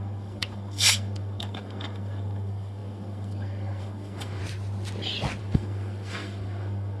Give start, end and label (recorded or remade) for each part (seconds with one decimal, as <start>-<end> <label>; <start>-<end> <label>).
0.0-4.4 remade; 4.4-5.4 recorded; 5.4-7.0 remade